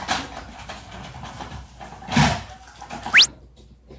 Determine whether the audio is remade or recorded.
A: recorded